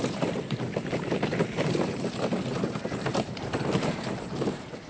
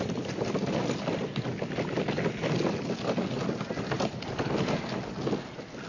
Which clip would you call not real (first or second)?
first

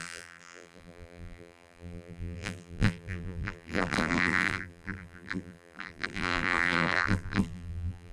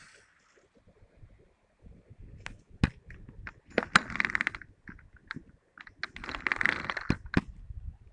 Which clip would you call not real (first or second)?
first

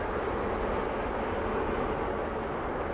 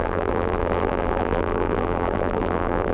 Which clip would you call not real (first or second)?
second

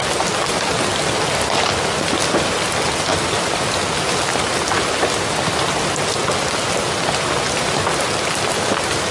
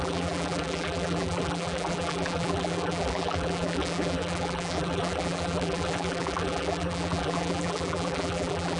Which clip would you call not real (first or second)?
second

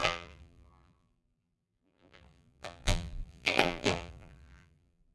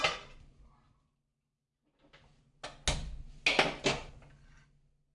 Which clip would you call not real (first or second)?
first